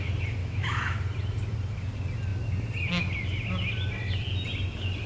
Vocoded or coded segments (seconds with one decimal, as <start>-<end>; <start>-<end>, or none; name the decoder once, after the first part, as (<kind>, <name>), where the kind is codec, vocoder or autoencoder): 0.4-1.0 (autoencoder, DAC-VAE)